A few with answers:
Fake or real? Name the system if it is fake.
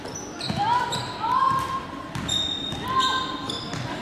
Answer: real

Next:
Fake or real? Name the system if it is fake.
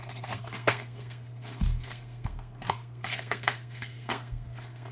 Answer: fake, codec, SNAC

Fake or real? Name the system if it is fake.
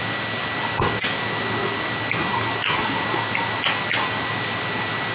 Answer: real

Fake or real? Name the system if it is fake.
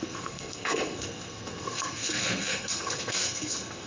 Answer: fake, codec, SNAC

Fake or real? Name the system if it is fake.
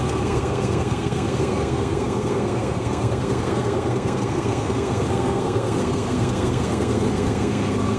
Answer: fake, codec, SNAC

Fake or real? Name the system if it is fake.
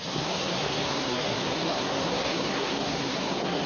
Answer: fake, codec, SNAC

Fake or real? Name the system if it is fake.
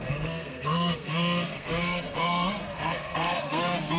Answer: fake, codec, SNAC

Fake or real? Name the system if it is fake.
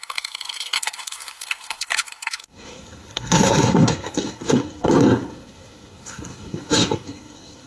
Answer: fake, codec, SNAC